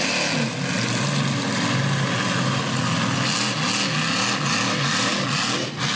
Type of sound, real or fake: real